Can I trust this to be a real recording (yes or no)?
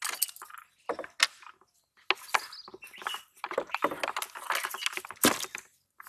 yes